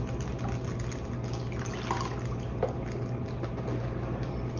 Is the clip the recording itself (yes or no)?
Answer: yes